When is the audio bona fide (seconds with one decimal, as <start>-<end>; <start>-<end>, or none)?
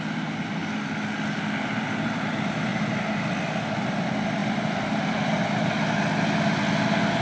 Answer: 0.0-4.4; 5.7-7.2